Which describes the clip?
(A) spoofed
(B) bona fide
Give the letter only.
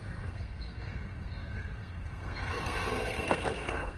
A